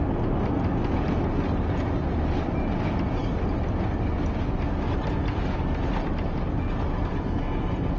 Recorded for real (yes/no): yes